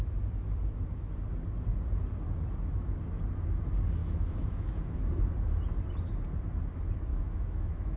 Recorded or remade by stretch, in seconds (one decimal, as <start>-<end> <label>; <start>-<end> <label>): 0.0-4.0 recorded; 4.0-5.1 remade; 5.1-7.1 recorded; 7.1-8.0 remade